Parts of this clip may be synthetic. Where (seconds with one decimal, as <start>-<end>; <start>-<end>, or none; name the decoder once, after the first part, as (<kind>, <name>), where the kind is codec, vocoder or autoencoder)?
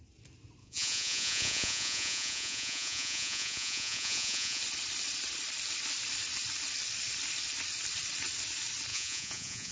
0.6-4.6 (vocoder, Vocos); 8.9-9.7